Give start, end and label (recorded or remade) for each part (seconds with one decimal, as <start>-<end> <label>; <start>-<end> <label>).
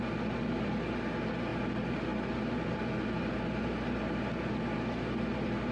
0.0-5.7 recorded